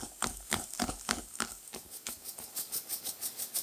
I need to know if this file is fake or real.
fake